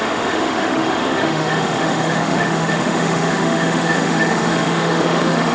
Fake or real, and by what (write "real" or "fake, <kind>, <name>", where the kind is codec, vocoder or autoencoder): fake, autoencoder, DAC-VAE